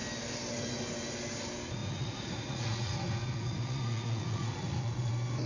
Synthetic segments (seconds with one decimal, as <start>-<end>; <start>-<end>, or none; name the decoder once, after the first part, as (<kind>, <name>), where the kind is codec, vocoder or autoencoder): 1.8-5.1 (vocoder, Vocos)